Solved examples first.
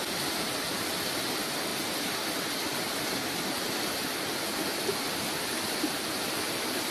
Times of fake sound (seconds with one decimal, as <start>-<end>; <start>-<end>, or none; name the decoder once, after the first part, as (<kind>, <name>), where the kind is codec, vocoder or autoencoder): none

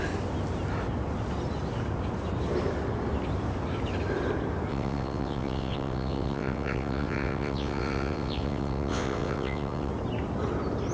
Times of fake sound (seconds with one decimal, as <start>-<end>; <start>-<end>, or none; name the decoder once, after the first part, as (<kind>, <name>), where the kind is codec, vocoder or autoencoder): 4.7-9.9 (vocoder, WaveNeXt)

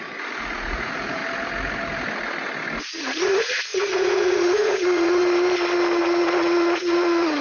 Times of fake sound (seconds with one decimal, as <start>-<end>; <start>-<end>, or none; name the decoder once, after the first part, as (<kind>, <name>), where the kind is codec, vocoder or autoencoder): 0.0-1.2 (vocoder, Vocos); 2.8-5.2; 6.0-7.4

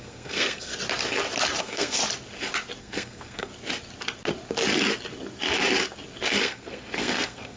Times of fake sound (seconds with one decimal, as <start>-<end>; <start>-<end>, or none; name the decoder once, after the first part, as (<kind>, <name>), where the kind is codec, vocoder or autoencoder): 0.0-0.7 (codec, SNAC); 1.6-2.0; 2.8-3.5; 6.4-7.6